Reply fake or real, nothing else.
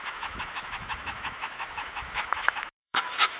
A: fake